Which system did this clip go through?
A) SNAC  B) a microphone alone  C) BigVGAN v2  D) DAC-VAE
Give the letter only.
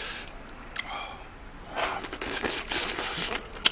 B